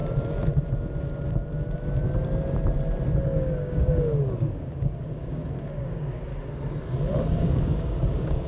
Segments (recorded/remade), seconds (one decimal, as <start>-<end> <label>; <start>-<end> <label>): 0.0-3.2 recorded; 3.2-6.3 remade; 6.3-7.4 recorded; 7.4-8.5 remade